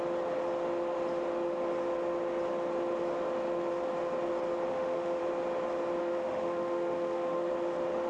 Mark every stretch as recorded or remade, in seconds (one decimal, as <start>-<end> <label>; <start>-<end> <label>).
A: 0.0-4.7 recorded; 4.7-5.2 remade; 5.2-6.0 recorded; 6.0-7.5 remade; 7.5-8.1 recorded